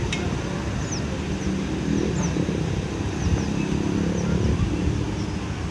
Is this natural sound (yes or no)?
yes